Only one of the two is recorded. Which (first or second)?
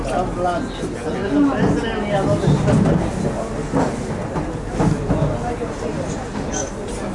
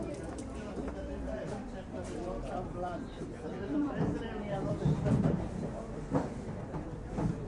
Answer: first